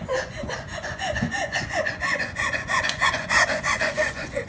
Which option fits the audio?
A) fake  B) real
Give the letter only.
A